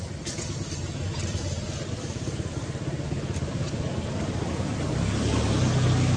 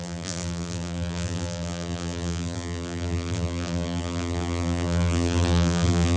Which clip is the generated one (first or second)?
second